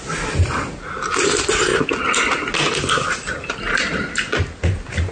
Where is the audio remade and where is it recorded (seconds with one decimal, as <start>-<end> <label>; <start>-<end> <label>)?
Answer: 0.0-5.1 recorded